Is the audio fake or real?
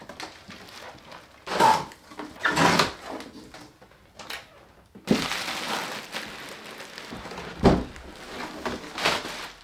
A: real